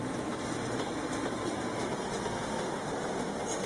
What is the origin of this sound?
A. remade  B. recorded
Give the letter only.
B